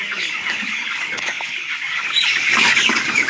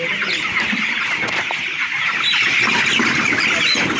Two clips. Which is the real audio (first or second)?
second